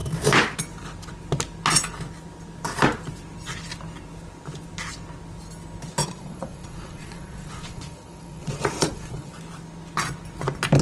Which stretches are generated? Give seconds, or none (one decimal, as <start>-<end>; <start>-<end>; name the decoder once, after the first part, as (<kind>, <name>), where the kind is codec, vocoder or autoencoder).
6.0-9.4 (vocoder, Vocos)